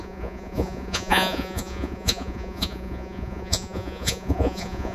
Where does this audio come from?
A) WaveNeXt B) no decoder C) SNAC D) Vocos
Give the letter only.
D